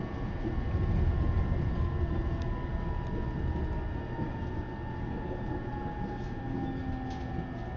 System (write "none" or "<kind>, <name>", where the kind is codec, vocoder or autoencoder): none